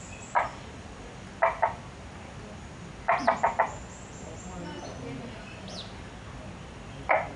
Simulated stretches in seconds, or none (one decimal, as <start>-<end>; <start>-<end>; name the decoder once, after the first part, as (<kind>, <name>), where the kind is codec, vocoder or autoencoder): none